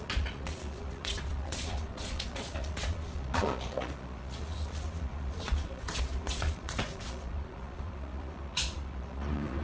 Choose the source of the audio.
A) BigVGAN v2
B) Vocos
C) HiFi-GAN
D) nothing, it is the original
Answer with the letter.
B